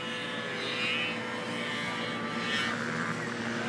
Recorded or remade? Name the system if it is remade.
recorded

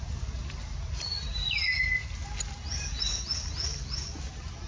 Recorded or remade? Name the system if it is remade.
recorded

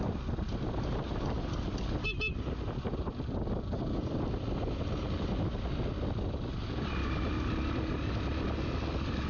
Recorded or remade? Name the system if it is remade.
recorded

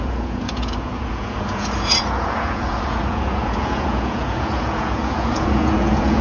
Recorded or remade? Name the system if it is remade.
remade, vocoder, Vocos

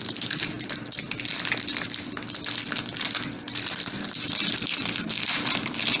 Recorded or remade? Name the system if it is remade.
recorded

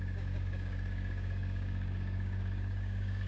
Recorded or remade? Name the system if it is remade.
remade, codec, DAC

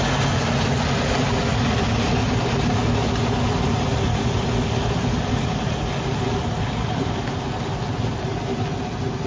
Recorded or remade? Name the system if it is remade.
recorded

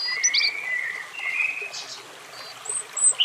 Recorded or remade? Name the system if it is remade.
recorded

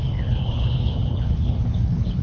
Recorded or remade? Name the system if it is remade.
remade, codec, HILCodec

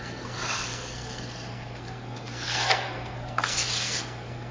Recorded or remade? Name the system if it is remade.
remade, codec, SNAC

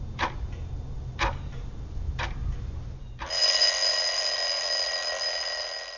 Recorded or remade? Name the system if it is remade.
recorded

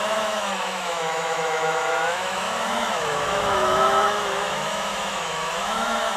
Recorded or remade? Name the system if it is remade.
remade, autoencoder, DAC-VAE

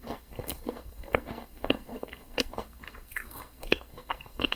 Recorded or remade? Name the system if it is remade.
remade, codec, SNAC